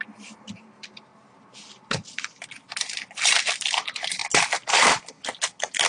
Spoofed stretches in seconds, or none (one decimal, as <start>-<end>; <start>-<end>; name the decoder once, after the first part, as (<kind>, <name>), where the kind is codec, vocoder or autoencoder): 0.0-4.2 (vocoder, BigVGAN v2); 4.8-5.9